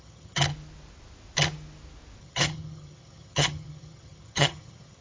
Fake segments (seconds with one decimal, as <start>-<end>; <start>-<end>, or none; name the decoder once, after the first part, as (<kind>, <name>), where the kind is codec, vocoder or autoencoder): 0.0-0.4 (vocoder, HiFi-GAN); 2.2-5.0